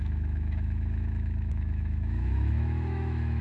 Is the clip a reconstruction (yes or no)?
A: yes